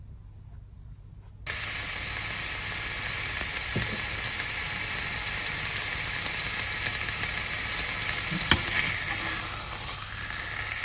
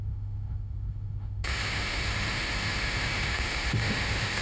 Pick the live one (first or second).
first